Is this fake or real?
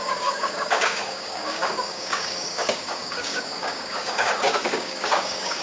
fake